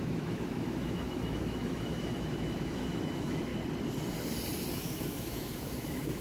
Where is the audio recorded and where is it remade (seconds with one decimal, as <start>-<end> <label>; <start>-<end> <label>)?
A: 0.0-3.5 remade; 3.5-4.7 recorded; 4.7-6.2 remade